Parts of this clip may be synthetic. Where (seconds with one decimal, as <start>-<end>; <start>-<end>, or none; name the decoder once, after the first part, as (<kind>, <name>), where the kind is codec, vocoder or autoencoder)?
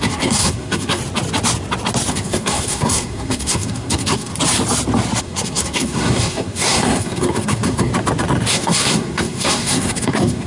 0.0-1.0 (codec, SNAC); 2.1-4.3; 5.2-7.9; 8.5-10.5